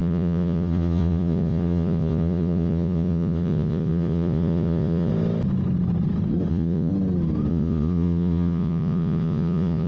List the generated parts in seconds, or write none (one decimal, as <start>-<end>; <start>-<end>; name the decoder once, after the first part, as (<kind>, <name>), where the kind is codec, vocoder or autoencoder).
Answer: 0.0-5.1 (vocoder, Vocos); 6.5-6.9; 7.5-9.9